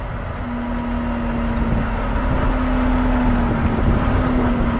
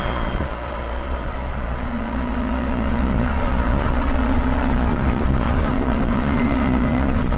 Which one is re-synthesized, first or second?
second